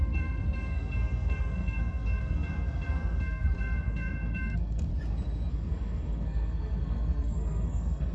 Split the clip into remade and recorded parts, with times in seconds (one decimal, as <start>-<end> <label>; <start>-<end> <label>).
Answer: 0.0-4.9 remade; 4.9-5.5 recorded; 5.5-8.1 remade